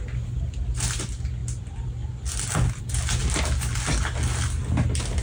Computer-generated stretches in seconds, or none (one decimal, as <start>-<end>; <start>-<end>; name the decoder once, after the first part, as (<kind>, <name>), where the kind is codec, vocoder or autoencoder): none